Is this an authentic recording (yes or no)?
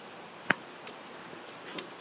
no